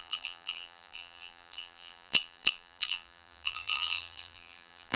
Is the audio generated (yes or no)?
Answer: yes